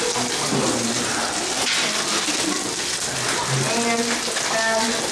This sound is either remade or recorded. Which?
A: recorded